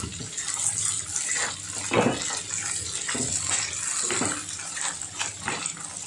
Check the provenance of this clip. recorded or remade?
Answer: recorded